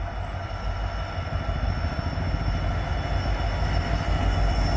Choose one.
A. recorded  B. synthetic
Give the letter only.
A